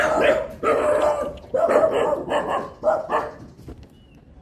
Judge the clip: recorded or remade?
recorded